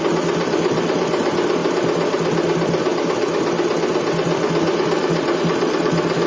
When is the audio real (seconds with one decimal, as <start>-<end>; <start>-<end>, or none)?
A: 1.6-5.4